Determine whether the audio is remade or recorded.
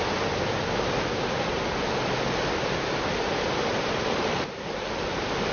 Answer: recorded